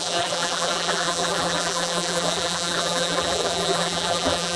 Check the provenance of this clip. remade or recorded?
remade